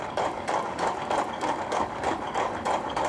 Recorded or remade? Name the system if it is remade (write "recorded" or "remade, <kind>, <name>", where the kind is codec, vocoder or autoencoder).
remade, codec, DAC